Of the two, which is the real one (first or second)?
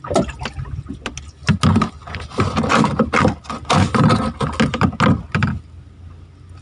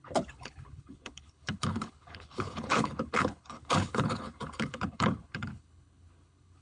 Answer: first